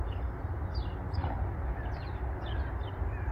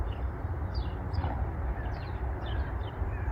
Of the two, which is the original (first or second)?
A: first